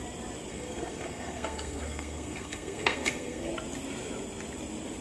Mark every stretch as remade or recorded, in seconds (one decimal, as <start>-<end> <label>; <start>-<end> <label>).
0.0-0.5 recorded; 0.5-3.5 remade; 3.5-5.0 recorded